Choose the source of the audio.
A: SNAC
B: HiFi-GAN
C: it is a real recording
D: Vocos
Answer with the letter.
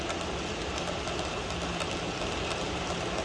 C